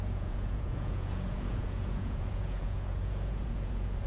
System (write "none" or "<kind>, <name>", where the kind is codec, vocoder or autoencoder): vocoder, Vocos